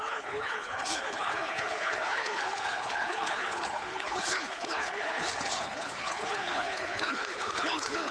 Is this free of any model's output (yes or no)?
no